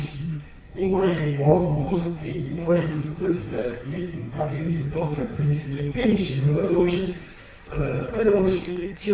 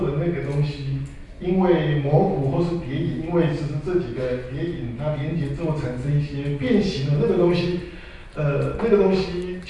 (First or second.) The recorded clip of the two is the second